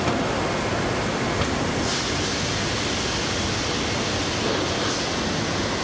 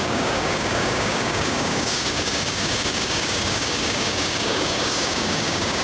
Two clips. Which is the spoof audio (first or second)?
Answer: second